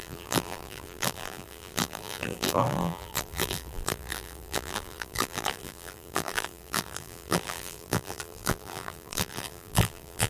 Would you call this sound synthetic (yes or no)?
yes